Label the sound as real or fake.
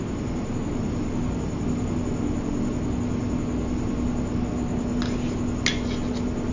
real